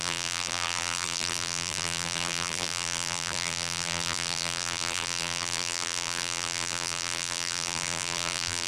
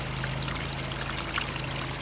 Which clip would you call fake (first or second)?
first